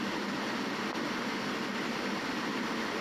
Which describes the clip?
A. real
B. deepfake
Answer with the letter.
A